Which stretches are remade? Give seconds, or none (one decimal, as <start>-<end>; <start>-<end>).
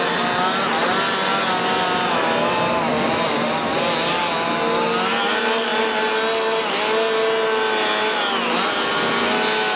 none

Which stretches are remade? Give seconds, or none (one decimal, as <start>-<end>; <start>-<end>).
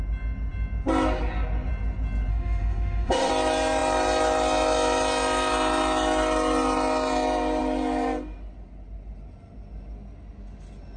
2.3-3.3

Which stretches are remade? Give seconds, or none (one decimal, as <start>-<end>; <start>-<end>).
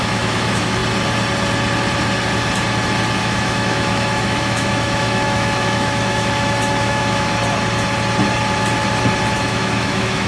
0.0-0.8; 3.2-7.3; 9.3-10.3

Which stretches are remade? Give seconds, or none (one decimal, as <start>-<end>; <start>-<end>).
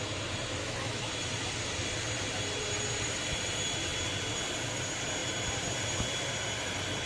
0.6-1.1